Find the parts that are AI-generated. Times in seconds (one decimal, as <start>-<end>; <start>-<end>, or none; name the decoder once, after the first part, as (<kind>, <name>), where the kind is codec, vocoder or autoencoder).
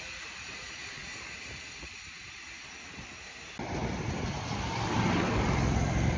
none